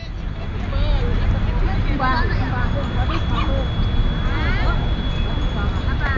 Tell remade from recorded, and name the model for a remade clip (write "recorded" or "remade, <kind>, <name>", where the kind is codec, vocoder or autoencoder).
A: recorded